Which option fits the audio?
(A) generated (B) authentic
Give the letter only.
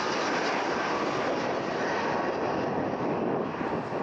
B